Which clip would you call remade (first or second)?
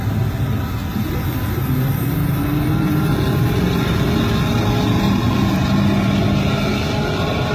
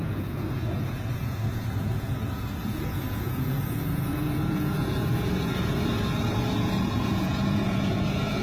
second